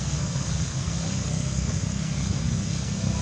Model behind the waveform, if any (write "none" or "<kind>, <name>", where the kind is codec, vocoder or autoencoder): codec, SNAC